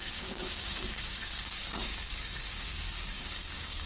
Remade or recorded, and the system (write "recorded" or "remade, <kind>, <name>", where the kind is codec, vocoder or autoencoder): remade, codec, DAC